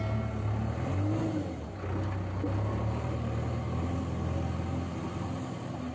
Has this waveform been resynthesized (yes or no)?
no